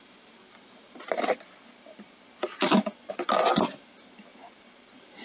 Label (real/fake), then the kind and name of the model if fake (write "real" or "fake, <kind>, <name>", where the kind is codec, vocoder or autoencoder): real